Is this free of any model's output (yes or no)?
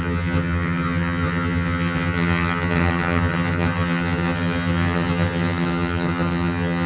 no